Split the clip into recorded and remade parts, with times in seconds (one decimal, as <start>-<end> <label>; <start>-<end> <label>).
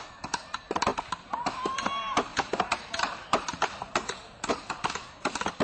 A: 0.0-0.9 remade; 0.9-1.5 recorded; 1.5-5.6 remade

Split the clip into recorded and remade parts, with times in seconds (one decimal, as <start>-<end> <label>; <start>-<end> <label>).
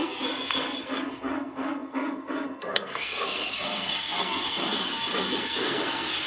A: 0.0-6.3 remade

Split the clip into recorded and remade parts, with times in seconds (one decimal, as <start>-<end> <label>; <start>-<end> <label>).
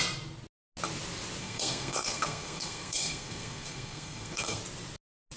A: 0.0-1.4 recorded; 1.4-4.6 remade; 4.6-5.4 recorded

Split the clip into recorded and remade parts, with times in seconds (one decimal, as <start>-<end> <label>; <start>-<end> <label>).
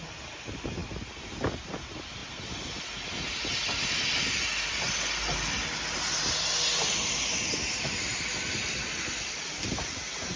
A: 0.0-10.4 recorded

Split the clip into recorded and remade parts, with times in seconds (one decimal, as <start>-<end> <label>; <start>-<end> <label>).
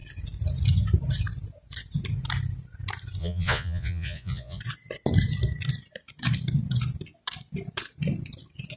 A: 0.0-3.2 recorded; 3.2-4.6 remade; 4.6-8.8 recorded